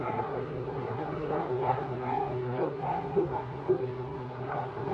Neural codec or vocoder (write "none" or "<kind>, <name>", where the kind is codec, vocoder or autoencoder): codec, SNAC